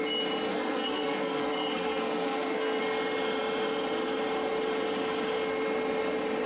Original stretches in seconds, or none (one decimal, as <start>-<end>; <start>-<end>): 0.0-0.5; 2.8-6.5